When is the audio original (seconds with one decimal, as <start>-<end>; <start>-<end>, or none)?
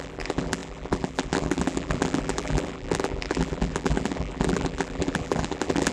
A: none